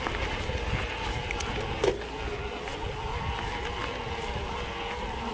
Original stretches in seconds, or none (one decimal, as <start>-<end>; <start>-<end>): 0.0-5.3